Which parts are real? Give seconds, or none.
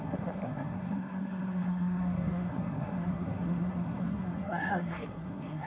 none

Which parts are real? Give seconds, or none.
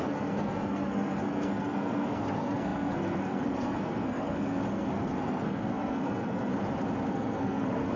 6.5-7.1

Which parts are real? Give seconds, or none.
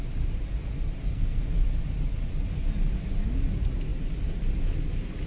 0.0-1.0; 1.6-5.3